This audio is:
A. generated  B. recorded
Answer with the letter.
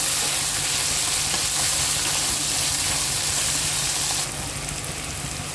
B